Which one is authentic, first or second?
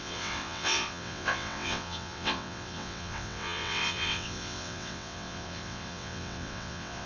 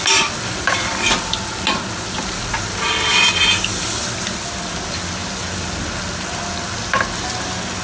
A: second